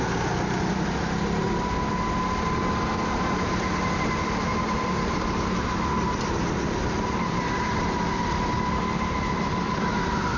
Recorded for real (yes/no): yes